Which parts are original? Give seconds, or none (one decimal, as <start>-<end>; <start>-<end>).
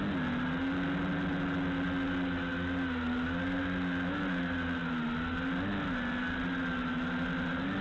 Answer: 0.0-7.8